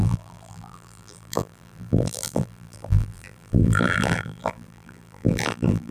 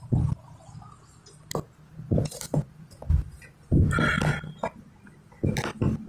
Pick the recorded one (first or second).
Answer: second